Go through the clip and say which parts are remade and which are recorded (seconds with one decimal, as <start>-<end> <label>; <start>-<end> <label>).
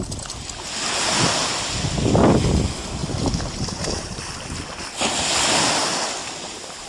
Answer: 0.0-6.2 recorded; 6.2-6.9 remade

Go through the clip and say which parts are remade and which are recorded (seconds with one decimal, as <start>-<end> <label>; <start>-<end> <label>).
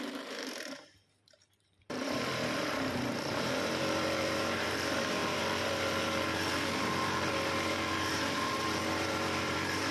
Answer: 0.0-9.9 remade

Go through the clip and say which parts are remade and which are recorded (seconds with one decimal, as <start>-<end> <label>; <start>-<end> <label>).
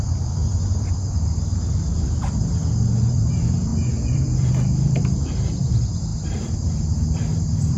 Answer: 0.0-0.4 remade; 0.4-0.9 recorded; 0.9-2.6 remade; 2.6-3.1 recorded; 3.1-7.8 remade